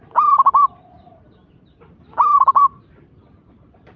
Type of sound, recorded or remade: remade